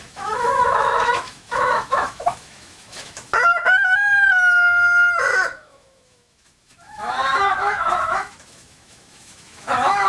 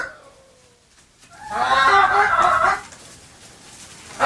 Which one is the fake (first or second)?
first